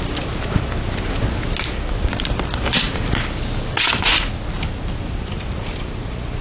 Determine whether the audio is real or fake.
real